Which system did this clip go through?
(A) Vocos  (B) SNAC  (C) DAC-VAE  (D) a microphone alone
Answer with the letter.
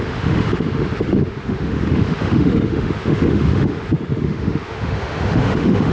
C